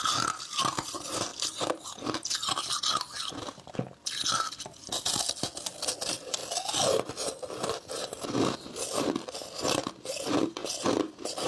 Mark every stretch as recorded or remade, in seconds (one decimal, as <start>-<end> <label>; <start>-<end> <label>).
0.0-11.5 recorded